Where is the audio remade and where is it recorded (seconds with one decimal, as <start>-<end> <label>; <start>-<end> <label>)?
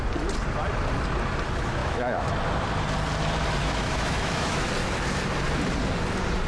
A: 0.0-1.8 recorded; 1.8-2.3 remade; 2.3-3.6 recorded; 3.6-4.7 remade; 4.7-6.5 recorded